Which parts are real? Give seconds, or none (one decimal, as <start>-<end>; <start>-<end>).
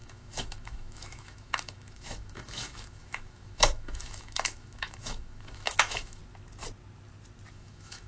6.2-7.5